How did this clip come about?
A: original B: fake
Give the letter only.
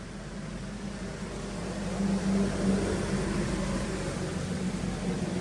A